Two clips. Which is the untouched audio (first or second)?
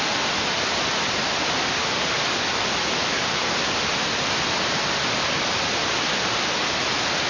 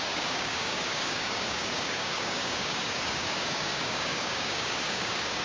first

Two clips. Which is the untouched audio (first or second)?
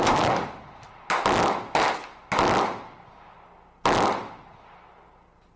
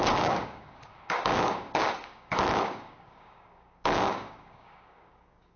first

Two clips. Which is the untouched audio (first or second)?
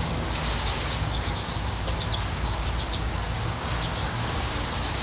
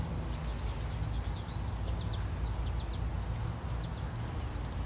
second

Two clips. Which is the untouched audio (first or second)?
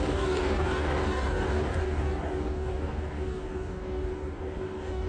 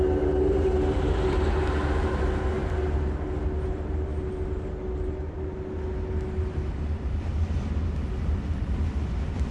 second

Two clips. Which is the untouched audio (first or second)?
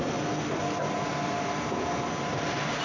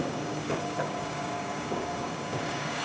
first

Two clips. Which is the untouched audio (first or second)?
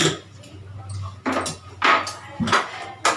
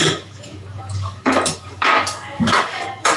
first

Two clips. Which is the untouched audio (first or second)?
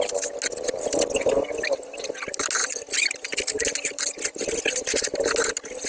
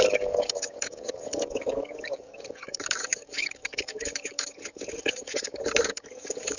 first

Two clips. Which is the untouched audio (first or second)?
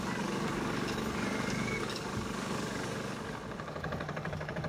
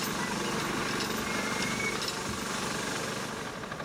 second